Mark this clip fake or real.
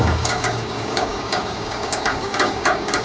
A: fake